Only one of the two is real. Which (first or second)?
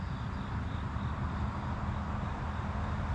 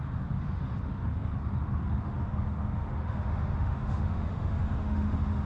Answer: first